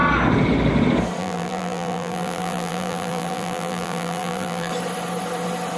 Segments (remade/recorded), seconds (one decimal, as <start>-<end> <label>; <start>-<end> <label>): 0.0-1.2 recorded; 1.2-4.7 remade; 4.7-5.8 recorded